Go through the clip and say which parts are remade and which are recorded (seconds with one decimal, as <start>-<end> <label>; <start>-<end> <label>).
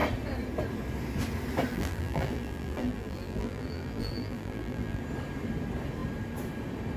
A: 0.0-1.7 recorded; 1.7-5.0 remade; 5.0-7.0 recorded